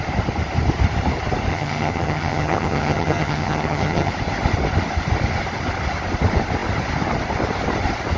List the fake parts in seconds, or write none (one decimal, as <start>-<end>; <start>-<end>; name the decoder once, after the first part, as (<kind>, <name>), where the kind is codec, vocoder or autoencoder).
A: 1.5-4.1 (vocoder, HiFi-GAN)